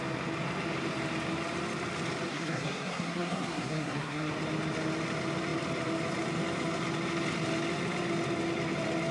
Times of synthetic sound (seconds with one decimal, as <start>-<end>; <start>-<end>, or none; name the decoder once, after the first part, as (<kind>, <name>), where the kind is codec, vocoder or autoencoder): 2.3-4.3 (codec, SNAC)